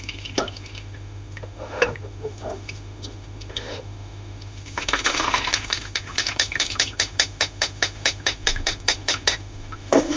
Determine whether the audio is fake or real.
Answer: fake